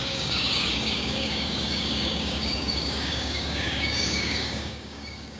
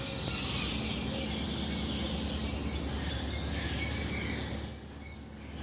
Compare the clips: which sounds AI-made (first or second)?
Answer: first